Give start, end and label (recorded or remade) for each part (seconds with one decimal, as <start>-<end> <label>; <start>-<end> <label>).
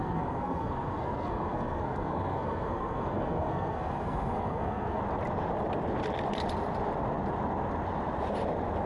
0.0-5.0 remade; 5.0-8.9 recorded